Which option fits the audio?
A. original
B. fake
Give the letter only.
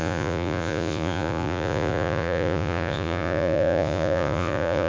B